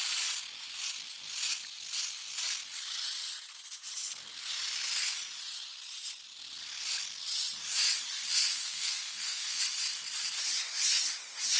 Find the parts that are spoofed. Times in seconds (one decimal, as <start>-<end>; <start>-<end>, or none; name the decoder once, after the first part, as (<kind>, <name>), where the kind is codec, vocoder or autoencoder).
8.5-9.6 (codec, SNAC)